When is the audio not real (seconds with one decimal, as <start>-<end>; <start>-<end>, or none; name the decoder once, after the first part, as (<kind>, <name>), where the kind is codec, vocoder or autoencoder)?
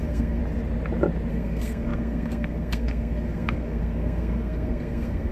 0.0-0.4 (codec, SNAC); 1.3-5.3